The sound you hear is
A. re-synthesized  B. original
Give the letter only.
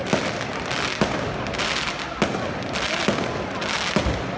B